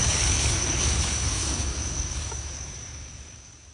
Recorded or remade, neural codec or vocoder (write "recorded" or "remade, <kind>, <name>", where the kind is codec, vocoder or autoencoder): remade, codec, DAC